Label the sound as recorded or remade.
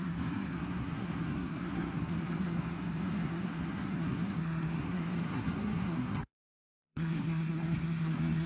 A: remade